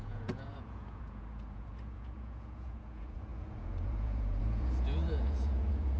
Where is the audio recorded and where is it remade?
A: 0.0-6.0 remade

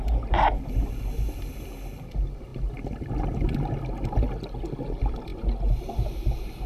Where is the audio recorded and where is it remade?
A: 0.0-6.7 recorded

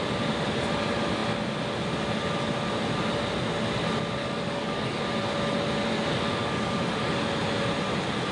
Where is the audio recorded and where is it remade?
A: 0.0-4.2 recorded; 4.2-5.0 remade; 5.0-6.4 recorded; 6.4-7.0 remade; 7.0-8.3 recorded

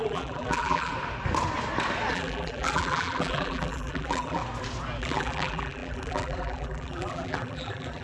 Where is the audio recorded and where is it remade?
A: 0.0-0.9 remade; 0.9-2.1 recorded; 2.1-4.4 remade; 4.4-5.0 recorded; 5.0-8.0 remade

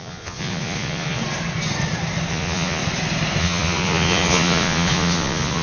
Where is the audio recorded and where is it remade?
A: 0.0-1.2 remade; 1.2-2.3 recorded; 2.3-2.8 remade; 2.8-3.4 recorded; 3.4-5.6 remade